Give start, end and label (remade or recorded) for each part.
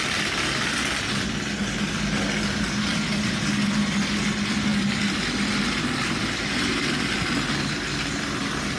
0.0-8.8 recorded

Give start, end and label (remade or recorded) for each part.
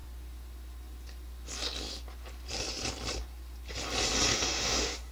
0.0-4.3 recorded; 4.3-5.1 remade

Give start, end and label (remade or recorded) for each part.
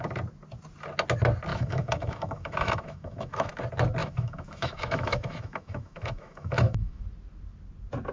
0.0-1.5 recorded; 1.5-3.5 remade; 3.5-4.0 recorded; 4.0-7.0 remade; 7.0-8.1 recorded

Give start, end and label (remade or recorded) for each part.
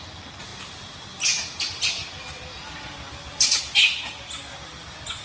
0.0-5.2 recorded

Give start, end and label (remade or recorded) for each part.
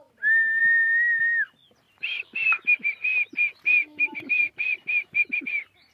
0.0-3.8 recorded; 3.8-4.5 remade; 4.5-5.9 recorded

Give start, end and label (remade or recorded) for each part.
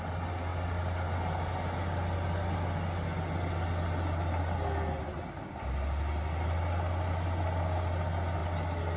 0.0-9.0 recorded